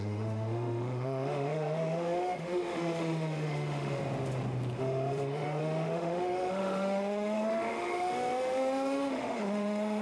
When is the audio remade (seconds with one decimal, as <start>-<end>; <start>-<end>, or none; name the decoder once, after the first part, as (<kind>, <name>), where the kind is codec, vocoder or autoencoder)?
0.0-4.0 (autoencoder, DAC-VAE); 4.8-10.0